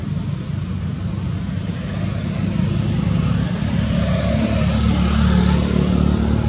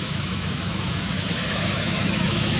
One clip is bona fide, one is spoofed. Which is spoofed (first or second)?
second